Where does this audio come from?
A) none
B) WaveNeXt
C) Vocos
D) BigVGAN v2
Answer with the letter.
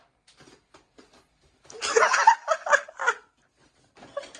A